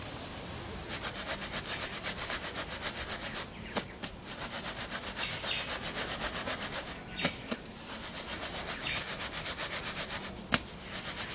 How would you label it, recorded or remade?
recorded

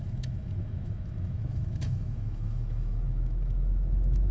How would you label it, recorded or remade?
remade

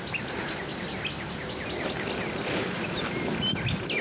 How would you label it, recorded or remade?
recorded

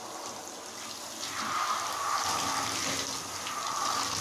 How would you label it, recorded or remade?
recorded